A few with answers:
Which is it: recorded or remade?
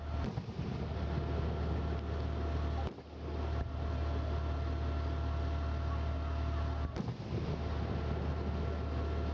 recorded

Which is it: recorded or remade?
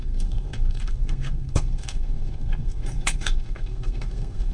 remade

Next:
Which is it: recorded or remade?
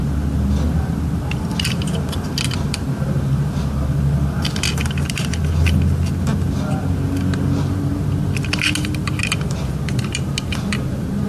recorded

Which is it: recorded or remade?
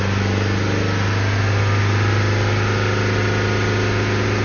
recorded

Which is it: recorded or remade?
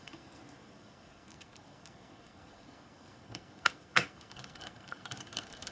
remade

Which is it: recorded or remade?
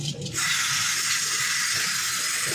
recorded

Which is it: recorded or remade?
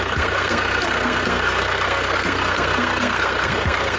remade